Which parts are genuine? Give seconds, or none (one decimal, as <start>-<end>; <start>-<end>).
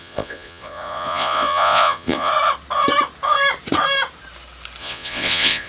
2.3-4.8